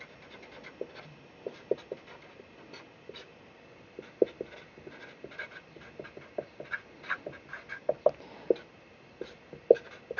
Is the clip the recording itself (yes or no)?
yes